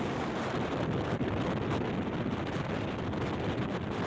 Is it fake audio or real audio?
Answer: real